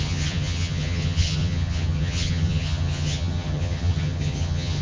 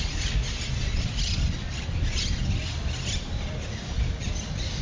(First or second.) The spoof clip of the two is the first